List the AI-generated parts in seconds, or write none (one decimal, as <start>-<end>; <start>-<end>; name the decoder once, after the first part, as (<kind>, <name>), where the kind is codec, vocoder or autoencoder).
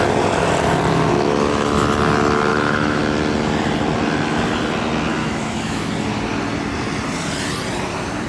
2.5-3.0 (autoencoder, DAC-VAE); 5.2-5.9